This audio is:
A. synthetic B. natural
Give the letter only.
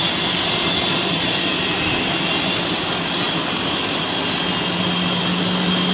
B